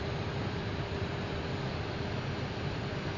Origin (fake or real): fake